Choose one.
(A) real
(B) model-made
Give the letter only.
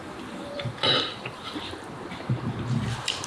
B